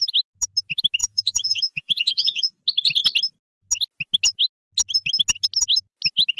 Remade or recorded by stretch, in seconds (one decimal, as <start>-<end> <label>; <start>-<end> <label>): 0.0-1.0 recorded; 1.0-2.6 remade; 2.6-6.4 recorded